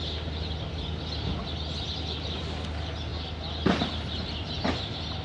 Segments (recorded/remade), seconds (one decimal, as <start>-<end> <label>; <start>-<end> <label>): 0.0-5.2 recorded